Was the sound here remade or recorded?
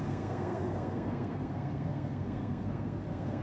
remade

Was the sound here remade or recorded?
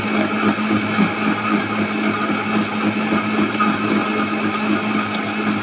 recorded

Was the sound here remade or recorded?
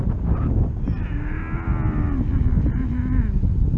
recorded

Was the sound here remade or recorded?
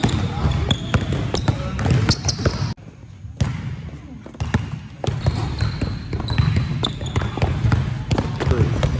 recorded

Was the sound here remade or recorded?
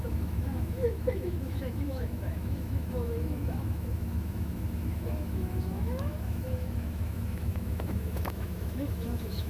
remade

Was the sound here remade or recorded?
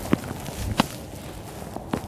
recorded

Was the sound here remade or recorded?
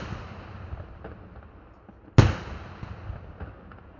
recorded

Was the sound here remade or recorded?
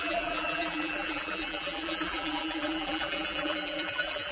remade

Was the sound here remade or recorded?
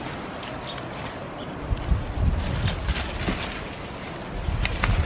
recorded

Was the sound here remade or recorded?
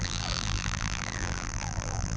remade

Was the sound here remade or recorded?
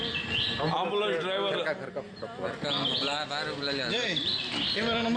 recorded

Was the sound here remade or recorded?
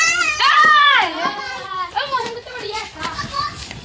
remade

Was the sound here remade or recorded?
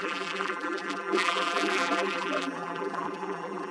remade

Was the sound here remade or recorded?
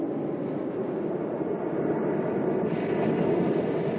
recorded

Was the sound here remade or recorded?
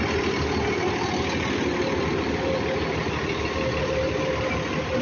recorded